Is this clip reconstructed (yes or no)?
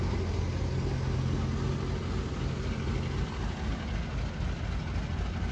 no